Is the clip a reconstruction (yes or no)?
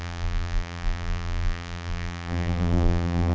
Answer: yes